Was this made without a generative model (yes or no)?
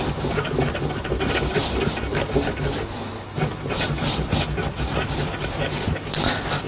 yes